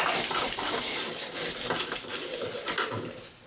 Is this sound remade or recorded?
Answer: recorded